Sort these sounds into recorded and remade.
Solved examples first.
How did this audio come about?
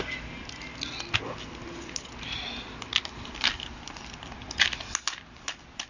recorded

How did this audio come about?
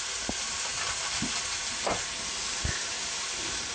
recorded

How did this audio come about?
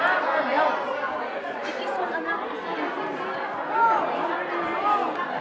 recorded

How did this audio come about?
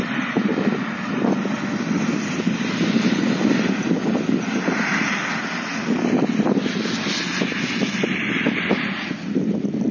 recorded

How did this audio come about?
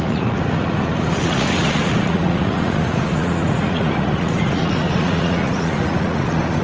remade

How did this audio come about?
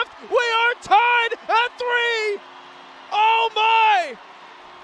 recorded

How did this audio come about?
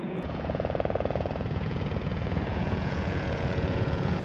remade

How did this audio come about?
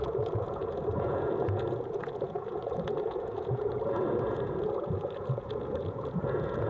remade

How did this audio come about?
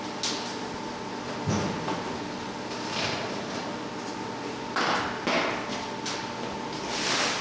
recorded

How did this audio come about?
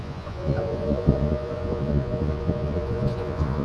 remade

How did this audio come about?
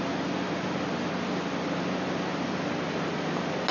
recorded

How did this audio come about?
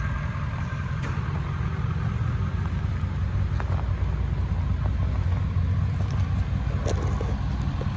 recorded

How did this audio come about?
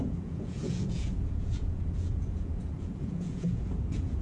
remade